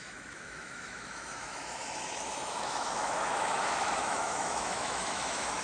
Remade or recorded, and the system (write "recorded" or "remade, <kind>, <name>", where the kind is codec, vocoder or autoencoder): remade, autoencoder, DAC-VAE